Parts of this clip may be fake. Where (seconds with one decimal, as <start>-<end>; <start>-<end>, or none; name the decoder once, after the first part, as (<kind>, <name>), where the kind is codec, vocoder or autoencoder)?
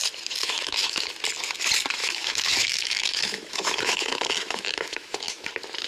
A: 0.4-1.1 (autoencoder, DAC-VAE); 2.0-5.5